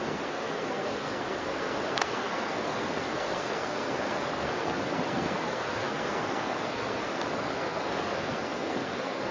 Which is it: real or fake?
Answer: fake